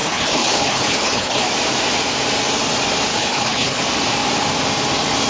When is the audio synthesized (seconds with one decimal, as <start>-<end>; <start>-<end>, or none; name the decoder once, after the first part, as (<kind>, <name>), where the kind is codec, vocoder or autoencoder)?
0.0-1.4 (codec, HILCodec); 3.1-3.8

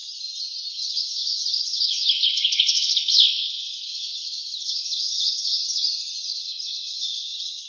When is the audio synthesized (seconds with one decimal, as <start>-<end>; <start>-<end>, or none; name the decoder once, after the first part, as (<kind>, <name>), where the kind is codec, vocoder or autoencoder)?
0.7-5.6 (codec, HILCodec); 6.2-7.7

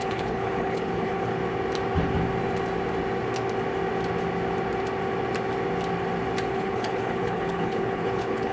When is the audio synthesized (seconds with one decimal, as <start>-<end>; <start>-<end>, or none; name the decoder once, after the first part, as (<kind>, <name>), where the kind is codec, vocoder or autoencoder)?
0.0-1.4 (codec, HILCodec); 6.5-8.5

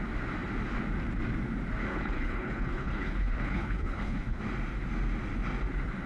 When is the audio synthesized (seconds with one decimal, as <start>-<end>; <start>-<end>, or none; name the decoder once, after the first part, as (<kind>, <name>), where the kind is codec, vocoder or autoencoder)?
1.9-4.4 (codec, HILCodec)